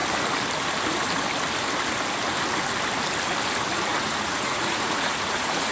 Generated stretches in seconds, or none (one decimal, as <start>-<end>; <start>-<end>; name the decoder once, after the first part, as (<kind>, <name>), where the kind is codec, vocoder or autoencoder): 3.9-5.7 (vocoder, Vocos)